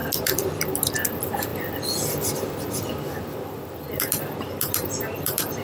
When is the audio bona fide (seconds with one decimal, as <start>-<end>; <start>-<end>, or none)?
1.5-3.8